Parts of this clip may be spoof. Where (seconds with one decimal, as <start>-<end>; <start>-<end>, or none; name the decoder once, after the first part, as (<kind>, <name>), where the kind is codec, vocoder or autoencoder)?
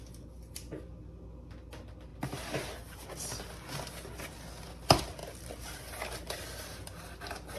none